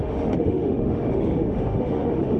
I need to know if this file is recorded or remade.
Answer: remade